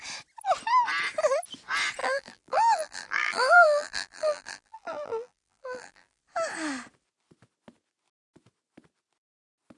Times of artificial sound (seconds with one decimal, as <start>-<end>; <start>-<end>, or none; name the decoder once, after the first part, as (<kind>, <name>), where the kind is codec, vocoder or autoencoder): 2.0-6.2 (vocoder, BigVGAN v2)